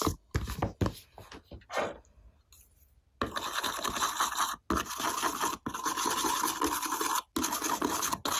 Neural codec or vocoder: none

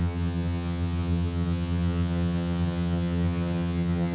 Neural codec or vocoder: vocoder, HiFi-GAN